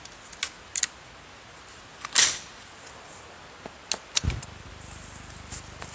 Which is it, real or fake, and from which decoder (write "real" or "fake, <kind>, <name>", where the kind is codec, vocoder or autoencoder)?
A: real